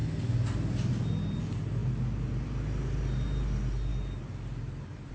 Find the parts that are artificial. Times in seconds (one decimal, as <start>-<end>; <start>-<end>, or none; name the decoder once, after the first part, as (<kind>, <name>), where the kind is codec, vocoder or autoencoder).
none